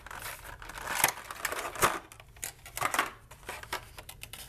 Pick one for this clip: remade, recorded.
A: recorded